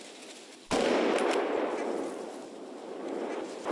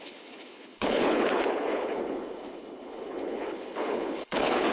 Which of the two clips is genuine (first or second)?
first